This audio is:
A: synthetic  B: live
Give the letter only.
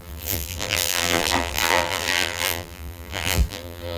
A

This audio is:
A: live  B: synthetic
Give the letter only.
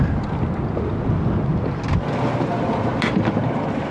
A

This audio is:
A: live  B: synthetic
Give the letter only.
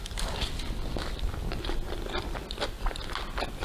A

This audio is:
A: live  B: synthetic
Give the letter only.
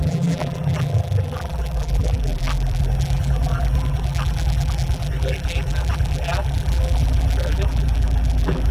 B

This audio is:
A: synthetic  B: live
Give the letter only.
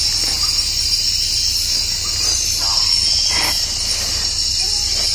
B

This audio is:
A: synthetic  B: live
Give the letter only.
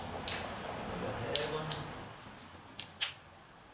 B